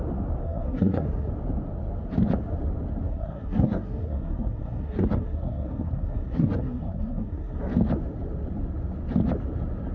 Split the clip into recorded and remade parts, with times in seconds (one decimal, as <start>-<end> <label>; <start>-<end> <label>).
0.0-0.4 recorded; 0.4-1.3 remade; 1.3-3.1 recorded; 3.1-7.6 remade; 7.6-9.9 recorded